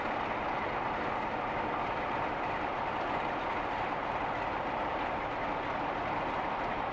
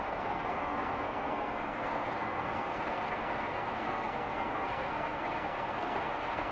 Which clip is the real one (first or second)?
first